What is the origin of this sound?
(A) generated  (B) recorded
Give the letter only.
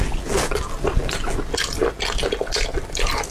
B